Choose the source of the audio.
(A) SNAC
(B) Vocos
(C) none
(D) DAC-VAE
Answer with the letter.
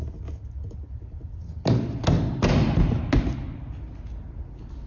C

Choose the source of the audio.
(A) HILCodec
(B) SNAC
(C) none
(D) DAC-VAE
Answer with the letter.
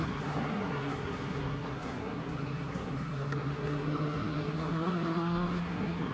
B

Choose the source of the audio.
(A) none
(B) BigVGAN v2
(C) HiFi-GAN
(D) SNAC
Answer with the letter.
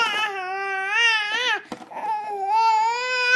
A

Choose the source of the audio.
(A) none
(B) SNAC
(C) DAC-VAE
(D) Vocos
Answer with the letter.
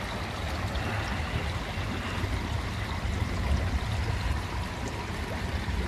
A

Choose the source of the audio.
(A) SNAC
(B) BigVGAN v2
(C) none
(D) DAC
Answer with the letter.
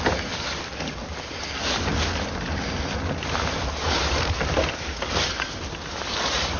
C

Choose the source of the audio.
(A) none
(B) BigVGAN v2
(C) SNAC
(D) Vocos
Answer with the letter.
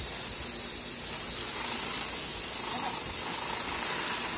A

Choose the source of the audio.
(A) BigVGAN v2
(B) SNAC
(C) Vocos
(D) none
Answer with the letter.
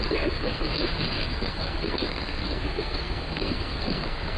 B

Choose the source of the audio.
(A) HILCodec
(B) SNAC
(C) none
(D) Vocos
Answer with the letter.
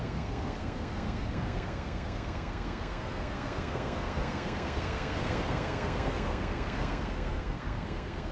B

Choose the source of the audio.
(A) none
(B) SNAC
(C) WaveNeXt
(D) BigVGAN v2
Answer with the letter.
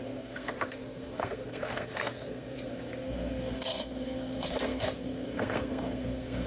B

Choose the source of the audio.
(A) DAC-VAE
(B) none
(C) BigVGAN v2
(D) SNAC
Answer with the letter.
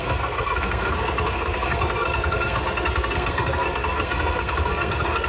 D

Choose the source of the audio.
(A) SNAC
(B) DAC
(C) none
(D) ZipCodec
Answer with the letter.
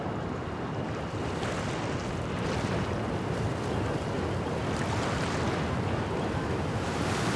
C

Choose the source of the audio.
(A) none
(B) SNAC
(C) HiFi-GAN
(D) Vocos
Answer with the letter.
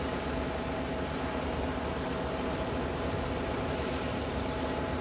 A